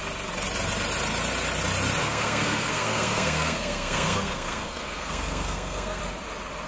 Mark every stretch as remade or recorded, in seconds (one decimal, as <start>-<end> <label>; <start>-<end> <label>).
0.0-2.0 recorded; 2.0-6.0 remade; 6.0-6.7 recorded